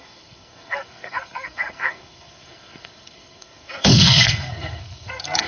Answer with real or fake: fake